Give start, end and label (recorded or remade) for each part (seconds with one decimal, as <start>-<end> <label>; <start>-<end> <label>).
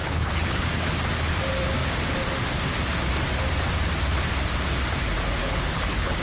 0.0-0.7 remade; 0.7-5.4 recorded; 5.4-6.2 remade